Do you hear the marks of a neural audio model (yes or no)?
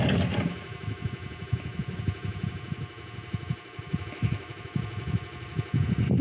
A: no